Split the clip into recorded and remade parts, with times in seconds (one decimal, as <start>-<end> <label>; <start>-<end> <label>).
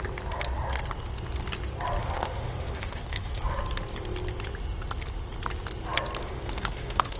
0.0-2.0 recorded; 2.0-3.4 remade; 3.4-6.2 recorded; 6.2-7.2 remade